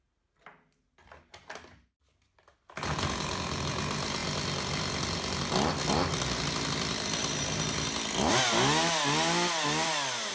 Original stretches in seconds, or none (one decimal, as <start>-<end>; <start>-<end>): 0.0-10.3

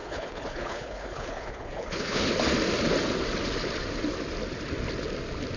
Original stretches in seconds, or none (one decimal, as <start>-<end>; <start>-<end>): 2.3-5.6